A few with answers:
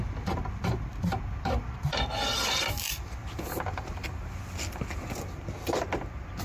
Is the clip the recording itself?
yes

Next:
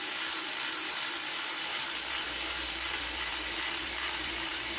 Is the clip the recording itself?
no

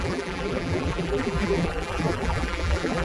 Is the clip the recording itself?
no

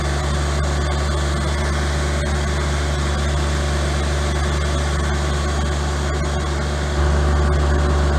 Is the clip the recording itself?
yes